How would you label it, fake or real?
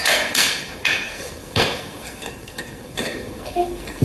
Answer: fake